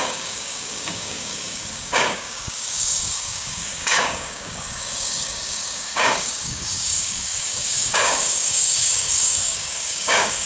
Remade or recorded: remade